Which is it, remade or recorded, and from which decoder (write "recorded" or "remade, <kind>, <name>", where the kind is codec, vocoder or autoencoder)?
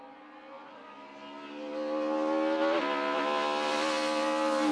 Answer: recorded